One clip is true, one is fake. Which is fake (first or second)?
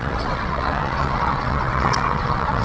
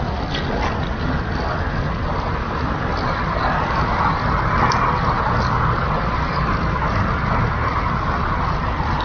first